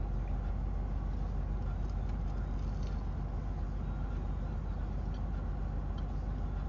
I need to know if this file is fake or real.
real